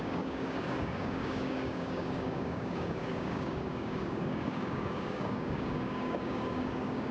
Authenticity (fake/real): fake